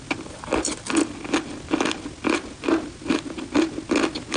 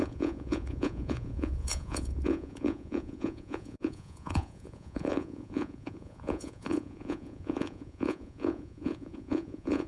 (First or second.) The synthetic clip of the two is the second